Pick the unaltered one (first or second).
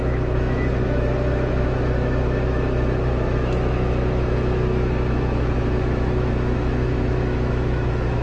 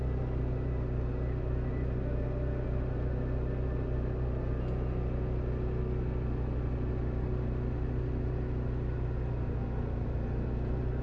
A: second